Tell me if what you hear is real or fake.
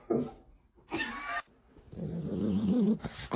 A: real